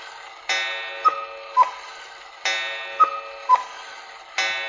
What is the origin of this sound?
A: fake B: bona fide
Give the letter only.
B